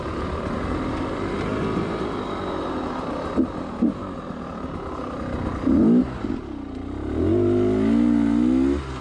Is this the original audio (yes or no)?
yes